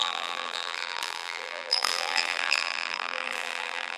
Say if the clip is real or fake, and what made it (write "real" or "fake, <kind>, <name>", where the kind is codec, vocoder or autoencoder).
fake, vocoder, BigVGAN v2